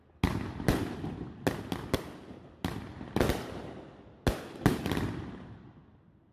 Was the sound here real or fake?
real